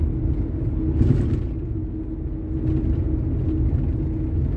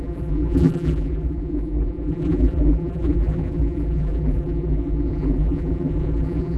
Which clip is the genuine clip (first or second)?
first